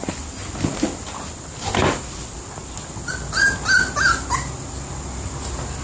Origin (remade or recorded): recorded